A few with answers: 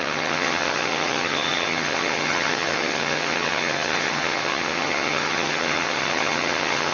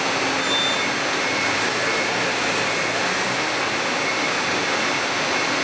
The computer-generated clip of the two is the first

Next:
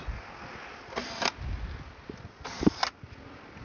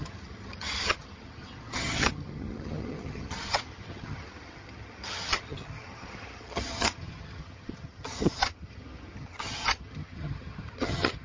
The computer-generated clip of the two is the second